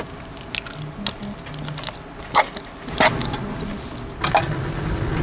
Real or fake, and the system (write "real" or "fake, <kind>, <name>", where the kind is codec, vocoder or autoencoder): real